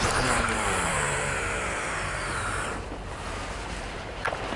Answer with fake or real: fake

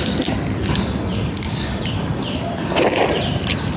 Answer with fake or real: real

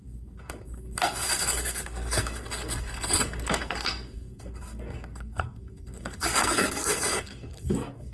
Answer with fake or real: fake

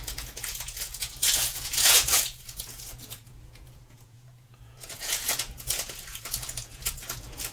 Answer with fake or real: fake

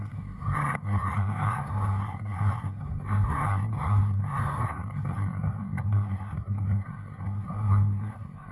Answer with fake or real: fake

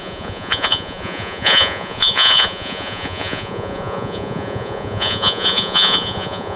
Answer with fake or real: fake